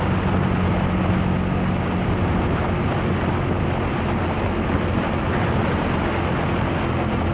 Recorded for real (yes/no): yes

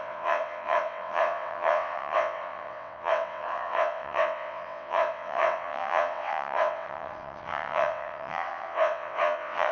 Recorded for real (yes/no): no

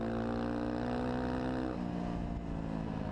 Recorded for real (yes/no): yes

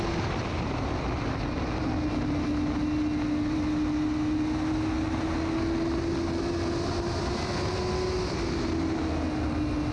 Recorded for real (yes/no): yes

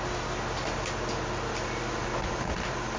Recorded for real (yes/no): yes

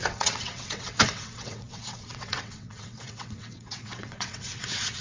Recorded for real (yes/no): no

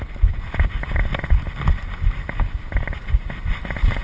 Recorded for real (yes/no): yes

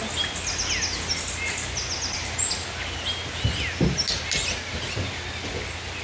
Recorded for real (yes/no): yes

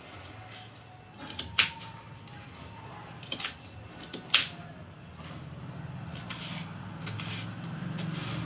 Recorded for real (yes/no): yes